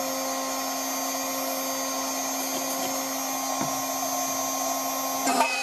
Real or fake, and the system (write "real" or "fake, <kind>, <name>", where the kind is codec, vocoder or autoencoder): real